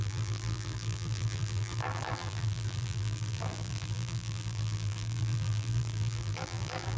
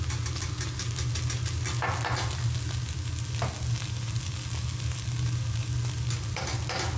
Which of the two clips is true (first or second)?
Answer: second